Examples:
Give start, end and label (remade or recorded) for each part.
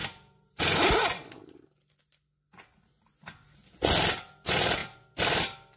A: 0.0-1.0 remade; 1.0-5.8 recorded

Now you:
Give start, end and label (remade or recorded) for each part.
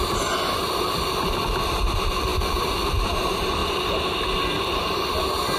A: 0.0-2.3 recorded; 2.3-3.1 remade; 3.1-5.6 recorded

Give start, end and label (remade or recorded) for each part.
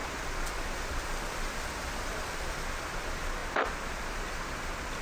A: 0.0-3.0 remade; 3.0-5.0 recorded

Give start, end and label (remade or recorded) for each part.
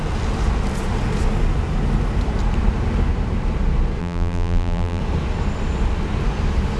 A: 0.0-4.0 recorded; 4.0-5.0 remade; 5.0-6.8 recorded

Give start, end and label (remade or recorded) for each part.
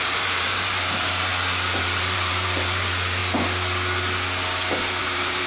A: 0.0-1.3 remade; 1.3-1.8 recorded; 1.8-3.2 remade; 3.2-5.0 recorded; 5.0-5.5 remade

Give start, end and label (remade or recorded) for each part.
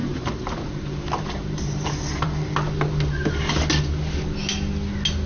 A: 0.0-2.5 remade; 2.5-5.3 recorded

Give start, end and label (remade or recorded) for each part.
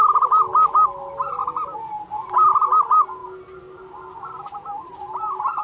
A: 0.0-5.6 recorded